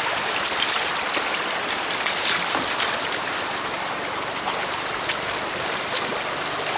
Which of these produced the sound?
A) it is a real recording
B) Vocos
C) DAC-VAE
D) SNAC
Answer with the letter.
A